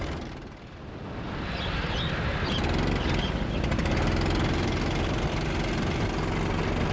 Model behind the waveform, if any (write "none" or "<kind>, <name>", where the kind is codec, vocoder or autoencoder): none